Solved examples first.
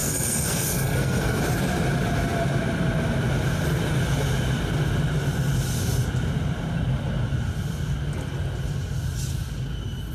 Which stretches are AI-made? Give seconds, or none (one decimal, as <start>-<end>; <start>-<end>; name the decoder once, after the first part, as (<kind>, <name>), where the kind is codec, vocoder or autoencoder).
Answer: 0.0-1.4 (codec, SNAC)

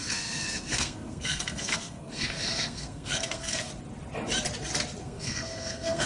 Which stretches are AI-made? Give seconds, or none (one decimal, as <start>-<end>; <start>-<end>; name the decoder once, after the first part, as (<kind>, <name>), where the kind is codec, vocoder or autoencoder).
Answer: 0.0-3.7 (codec, SNAC); 5.0-6.1

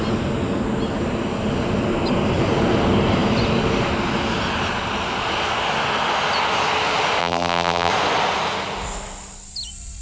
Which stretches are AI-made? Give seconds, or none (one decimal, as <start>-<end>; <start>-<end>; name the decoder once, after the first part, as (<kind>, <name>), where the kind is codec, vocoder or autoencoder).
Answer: 7.2-7.9 (vocoder, BigVGAN v2)

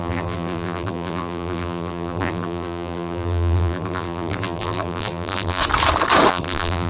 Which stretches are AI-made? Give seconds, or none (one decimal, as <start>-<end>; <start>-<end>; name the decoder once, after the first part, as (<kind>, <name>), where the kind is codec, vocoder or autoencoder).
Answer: 0.0-5.6 (vocoder, BigVGAN v2); 6.3-6.9

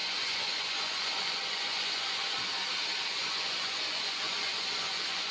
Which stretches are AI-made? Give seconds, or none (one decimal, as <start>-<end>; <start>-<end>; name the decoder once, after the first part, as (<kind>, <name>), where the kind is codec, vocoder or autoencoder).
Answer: 0.0-2.3 (vocoder, Vocos); 3.0-5.3